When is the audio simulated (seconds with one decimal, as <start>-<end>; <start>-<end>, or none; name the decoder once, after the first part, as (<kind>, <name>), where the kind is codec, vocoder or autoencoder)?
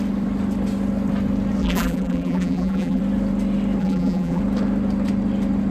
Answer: 1.6-3.0 (vocoder, BigVGAN v2); 3.8-4.4